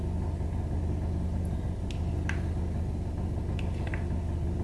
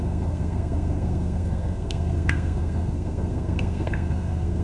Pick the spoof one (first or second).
second